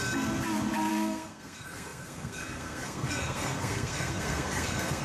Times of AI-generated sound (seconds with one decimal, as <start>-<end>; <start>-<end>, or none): 0.9-5.0

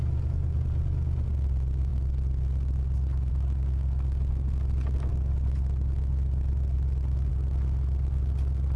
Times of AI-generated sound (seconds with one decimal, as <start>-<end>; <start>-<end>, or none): none